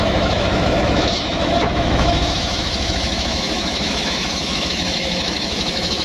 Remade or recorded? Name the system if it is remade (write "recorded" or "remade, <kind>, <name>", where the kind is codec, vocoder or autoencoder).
remade, autoencoder, DAC-VAE